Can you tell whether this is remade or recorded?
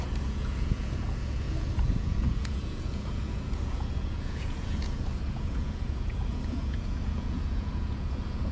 remade